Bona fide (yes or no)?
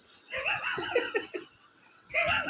no